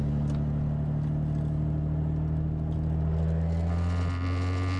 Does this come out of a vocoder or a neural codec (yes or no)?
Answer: no